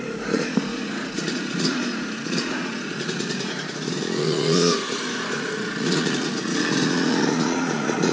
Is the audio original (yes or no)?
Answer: no